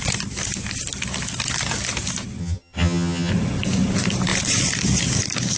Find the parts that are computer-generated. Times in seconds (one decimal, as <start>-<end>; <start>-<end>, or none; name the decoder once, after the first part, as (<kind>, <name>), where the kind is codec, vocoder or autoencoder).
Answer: 2.4-3.3 (vocoder, HiFi-GAN)